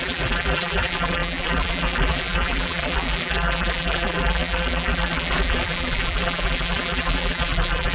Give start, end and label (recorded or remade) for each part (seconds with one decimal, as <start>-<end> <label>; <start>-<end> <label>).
0.0-7.9 remade